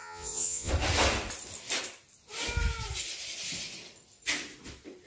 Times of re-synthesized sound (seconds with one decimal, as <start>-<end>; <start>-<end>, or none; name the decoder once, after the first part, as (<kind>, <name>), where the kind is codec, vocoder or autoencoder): 0.0-0.7 (vocoder, Vocos)